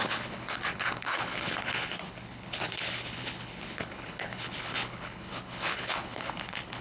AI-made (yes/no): yes